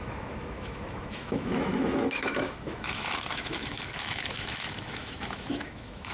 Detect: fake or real fake